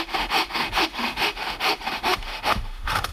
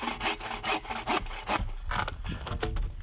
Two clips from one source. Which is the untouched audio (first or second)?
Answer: second